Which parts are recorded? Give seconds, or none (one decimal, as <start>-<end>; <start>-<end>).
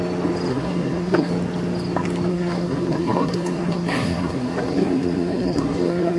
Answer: 0.0-0.5; 1.3-2.3